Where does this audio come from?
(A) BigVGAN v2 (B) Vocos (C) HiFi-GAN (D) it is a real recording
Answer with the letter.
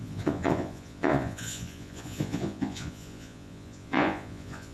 B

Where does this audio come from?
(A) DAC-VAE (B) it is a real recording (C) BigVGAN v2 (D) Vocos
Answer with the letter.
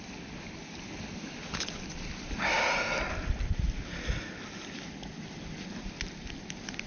B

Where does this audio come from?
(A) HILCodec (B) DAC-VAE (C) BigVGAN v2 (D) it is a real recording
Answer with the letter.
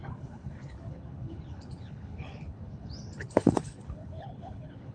A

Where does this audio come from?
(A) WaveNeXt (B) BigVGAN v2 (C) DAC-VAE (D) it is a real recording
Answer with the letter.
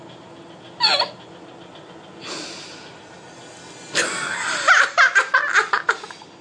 D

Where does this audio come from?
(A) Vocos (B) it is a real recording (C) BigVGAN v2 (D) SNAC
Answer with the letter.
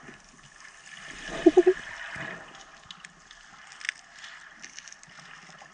B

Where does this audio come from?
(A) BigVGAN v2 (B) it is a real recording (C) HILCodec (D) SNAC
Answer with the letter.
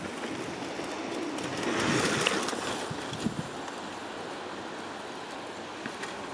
B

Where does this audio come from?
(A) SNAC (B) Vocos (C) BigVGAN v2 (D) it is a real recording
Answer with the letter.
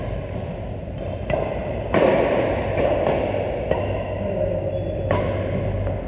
D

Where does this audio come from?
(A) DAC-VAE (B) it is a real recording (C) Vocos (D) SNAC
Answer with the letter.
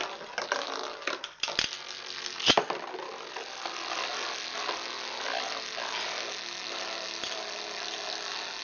B